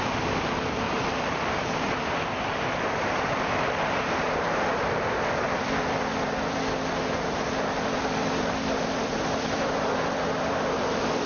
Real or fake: fake